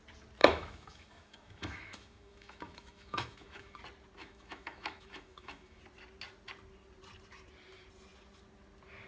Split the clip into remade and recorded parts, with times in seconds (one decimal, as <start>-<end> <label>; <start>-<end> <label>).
0.0-0.4 recorded; 0.4-3.8 remade; 3.8-4.2 recorded; 4.2-5.8 remade; 5.8-9.1 recorded